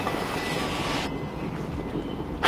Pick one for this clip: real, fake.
real